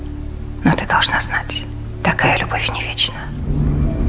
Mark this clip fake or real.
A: real